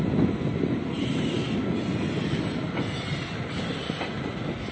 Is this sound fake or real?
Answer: real